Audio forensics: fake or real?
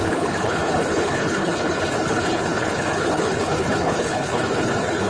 fake